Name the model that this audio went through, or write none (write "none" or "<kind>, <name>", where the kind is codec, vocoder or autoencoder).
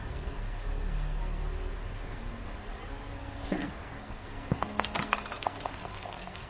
codec, SNAC